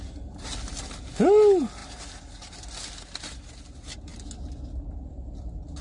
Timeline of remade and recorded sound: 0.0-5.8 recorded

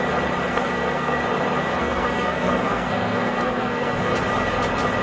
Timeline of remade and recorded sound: 0.0-0.5 recorded; 0.5-1.2 remade; 1.2-1.8 recorded; 1.8-4.1 remade; 4.1-5.0 recorded

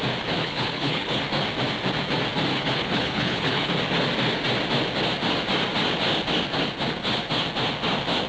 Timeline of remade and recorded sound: 0.0-0.4 recorded; 0.4-1.2 remade; 1.2-2.5 recorded; 2.5-3.7 remade; 3.7-8.3 recorded

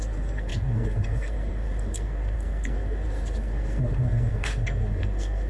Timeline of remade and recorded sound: 0.0-5.5 remade

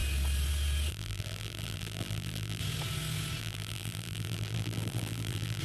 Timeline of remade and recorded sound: 0.0-0.9 recorded; 0.9-2.6 remade; 2.6-3.4 recorded; 3.4-5.6 remade